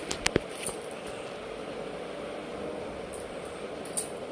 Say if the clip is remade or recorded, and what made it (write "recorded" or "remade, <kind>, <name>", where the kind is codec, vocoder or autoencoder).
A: recorded